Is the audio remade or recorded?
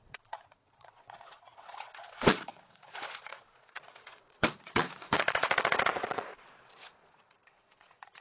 remade